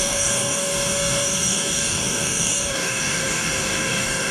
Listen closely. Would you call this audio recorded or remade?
remade